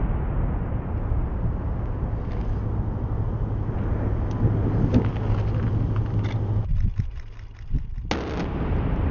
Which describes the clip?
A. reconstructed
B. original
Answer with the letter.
B